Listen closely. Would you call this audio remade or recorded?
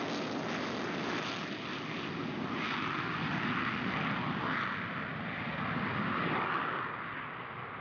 recorded